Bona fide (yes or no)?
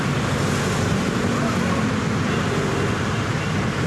yes